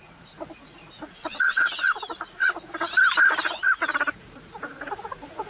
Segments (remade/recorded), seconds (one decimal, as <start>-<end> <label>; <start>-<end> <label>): 0.0-2.8 remade; 2.8-3.4 recorded; 3.4-5.5 remade